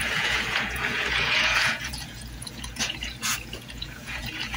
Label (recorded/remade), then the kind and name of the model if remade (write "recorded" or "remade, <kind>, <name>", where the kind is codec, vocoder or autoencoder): remade, vocoder, Vocos